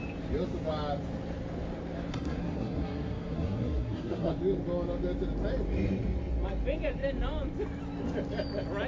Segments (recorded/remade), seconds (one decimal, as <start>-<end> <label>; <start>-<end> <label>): 0.0-2.1 recorded; 2.1-4.3 remade; 4.3-8.9 recorded